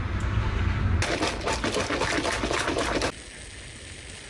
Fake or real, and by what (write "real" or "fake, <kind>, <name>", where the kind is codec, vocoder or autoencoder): real